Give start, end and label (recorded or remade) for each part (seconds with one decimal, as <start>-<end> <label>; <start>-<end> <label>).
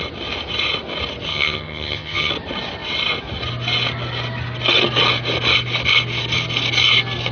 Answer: 0.0-1.3 recorded; 1.3-2.3 remade; 2.3-7.3 recorded